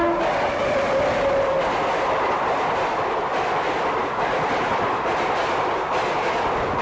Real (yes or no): yes